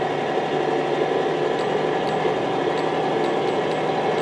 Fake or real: real